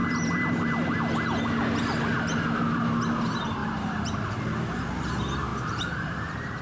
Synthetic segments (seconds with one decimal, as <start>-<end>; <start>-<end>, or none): 0.0-1.0; 3.6-4.3; 5.5-6.0